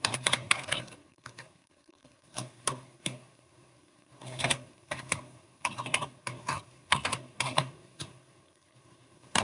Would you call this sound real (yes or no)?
no